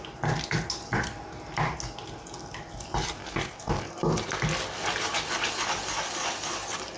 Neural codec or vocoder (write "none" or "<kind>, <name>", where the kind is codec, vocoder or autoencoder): none